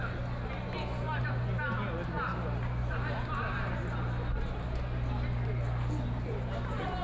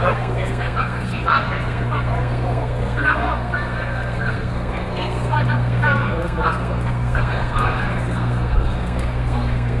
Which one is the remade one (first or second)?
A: second